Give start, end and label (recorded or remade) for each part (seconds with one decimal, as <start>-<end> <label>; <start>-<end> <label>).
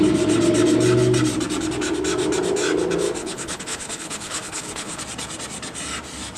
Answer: 0.0-3.2 recorded; 3.2-5.0 remade; 5.0-6.4 recorded